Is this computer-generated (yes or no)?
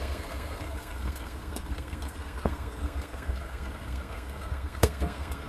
yes